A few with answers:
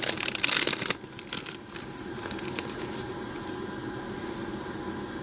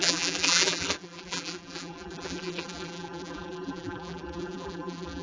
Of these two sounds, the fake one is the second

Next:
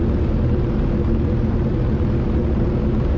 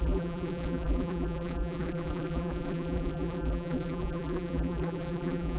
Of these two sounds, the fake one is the second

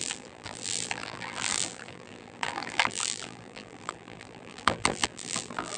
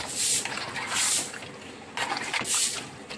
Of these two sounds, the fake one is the first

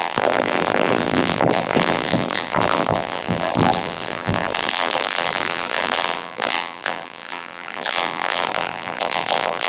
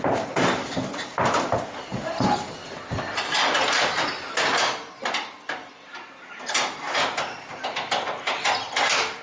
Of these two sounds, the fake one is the first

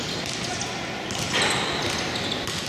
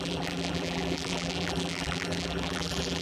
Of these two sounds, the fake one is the second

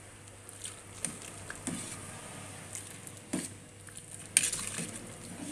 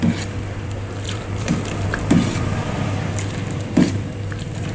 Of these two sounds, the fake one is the second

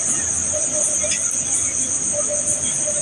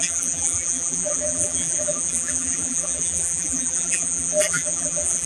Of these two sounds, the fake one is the second